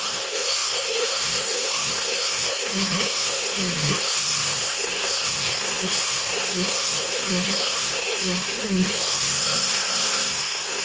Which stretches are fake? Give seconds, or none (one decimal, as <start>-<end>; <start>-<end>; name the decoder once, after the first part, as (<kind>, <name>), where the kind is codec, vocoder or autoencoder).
0.0-10.8 (codec, SNAC)